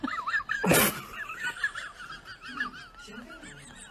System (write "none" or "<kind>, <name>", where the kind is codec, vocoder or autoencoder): none